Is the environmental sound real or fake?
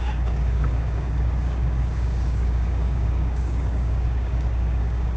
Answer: fake